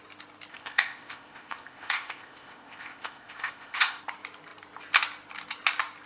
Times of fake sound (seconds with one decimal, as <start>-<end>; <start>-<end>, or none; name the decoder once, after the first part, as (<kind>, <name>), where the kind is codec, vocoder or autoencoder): 0.5-4.0 (codec, ZipCodec)